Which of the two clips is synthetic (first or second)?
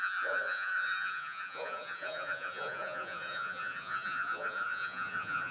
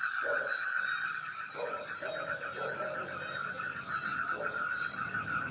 first